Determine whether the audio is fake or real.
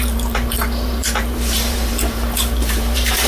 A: fake